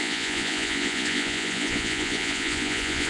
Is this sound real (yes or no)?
no